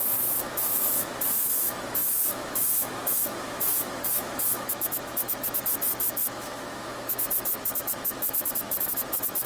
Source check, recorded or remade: remade